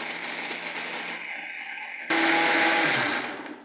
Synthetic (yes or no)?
no